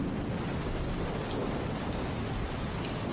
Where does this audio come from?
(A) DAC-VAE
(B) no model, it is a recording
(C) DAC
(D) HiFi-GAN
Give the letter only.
B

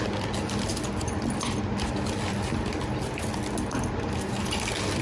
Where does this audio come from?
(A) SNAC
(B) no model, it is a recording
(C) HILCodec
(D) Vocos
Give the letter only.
B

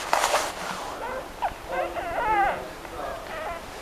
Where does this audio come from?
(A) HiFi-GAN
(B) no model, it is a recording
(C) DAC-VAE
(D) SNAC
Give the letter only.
B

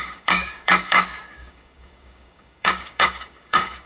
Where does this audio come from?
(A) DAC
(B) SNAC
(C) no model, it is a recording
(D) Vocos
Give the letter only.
A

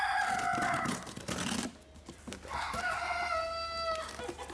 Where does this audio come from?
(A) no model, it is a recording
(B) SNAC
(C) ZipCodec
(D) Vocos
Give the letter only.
A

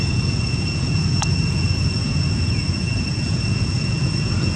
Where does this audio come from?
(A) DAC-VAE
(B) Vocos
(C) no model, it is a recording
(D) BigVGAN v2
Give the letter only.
B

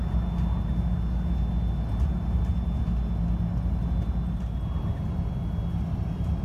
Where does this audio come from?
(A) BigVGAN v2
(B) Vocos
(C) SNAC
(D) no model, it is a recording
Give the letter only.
D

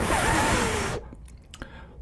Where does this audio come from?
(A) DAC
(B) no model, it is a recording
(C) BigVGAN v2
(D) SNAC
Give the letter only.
C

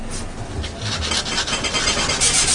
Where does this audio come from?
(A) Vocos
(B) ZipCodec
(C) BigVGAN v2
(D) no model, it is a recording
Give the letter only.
D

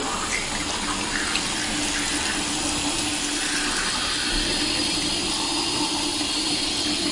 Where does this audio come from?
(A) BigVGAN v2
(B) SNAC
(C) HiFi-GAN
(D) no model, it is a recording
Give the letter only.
D